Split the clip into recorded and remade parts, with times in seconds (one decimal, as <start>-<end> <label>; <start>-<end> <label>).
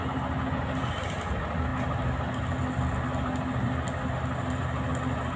0.0-5.4 recorded